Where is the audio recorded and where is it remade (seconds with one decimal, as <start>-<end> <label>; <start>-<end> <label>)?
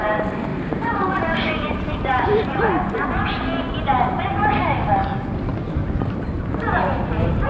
0.0-0.5 recorded; 0.5-2.6 remade; 2.6-5.5 recorded; 5.5-6.6 remade; 6.6-7.5 recorded